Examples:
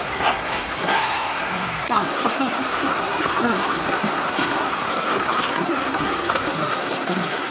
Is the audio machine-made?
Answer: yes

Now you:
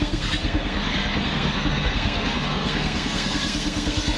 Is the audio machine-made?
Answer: yes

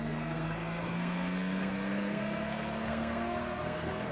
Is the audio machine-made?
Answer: yes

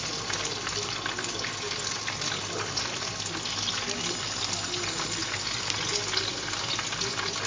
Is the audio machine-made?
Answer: no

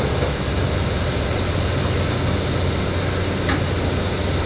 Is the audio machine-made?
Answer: no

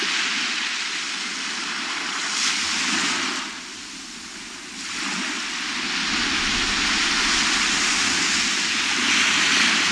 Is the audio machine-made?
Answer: no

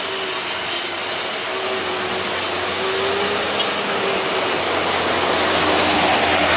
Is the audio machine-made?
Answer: no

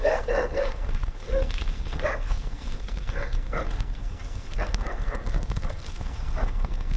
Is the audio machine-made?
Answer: yes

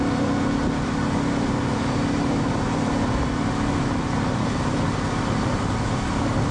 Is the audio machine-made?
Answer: no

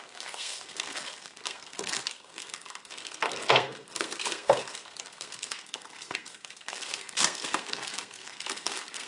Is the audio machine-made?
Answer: yes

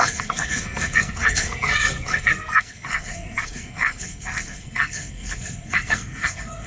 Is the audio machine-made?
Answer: yes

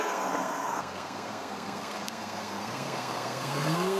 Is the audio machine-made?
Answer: yes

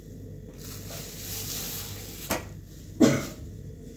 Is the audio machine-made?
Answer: no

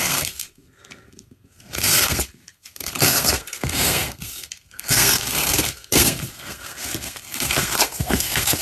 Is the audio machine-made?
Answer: yes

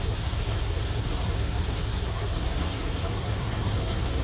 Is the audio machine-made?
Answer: yes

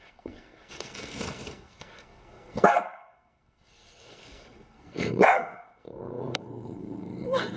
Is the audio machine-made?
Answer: yes